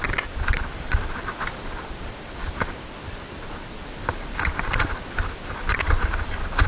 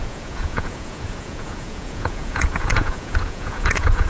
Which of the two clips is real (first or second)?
first